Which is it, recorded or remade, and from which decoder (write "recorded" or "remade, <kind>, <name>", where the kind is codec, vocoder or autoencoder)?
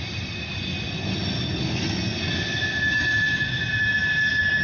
recorded